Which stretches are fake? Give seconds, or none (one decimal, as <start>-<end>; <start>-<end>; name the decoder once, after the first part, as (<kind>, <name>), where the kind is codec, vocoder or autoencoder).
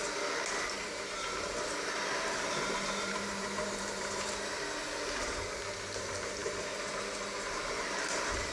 0.8-4.6 (vocoder, BigVGAN v2)